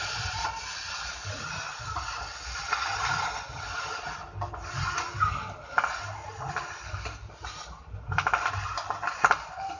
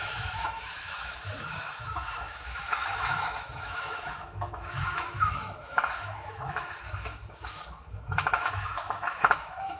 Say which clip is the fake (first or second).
second